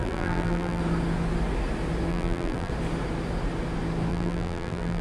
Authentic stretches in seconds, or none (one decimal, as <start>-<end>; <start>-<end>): 0.8-2.1; 2.7-4.1